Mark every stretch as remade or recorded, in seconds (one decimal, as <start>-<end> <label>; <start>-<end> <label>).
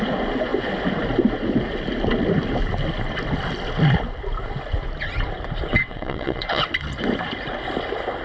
0.0-5.7 recorded; 5.7-6.7 remade; 6.7-8.2 recorded